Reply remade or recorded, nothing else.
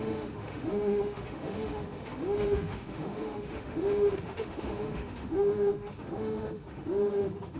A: remade